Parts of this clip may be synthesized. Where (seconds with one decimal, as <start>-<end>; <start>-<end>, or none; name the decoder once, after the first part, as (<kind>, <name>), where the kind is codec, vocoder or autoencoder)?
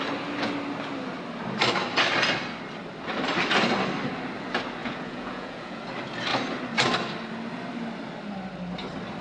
4.8-5.8 (vocoder, Vocos)